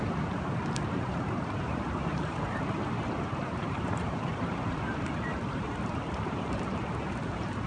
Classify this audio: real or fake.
fake